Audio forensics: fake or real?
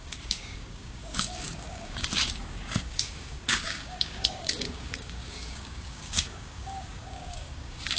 fake